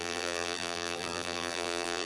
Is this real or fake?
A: fake